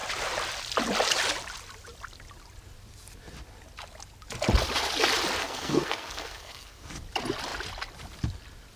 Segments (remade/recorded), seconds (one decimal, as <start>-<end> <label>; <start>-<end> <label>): 0.0-5.4 recorded; 5.4-7.0 remade; 7.0-8.8 recorded